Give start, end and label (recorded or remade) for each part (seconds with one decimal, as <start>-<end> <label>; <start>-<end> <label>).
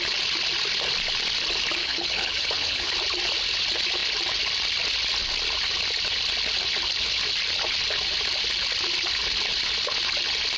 0.0-1.8 recorded; 1.8-2.9 remade; 2.9-10.6 recorded